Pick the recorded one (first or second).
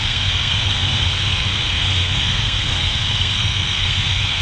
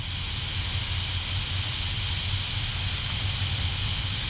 second